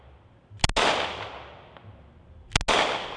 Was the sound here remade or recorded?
recorded